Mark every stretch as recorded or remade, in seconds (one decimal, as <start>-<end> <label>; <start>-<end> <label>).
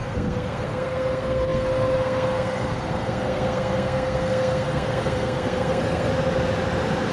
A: 0.0-6.1 remade; 6.1-7.1 recorded